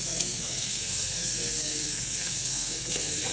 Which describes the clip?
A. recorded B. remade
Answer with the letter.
B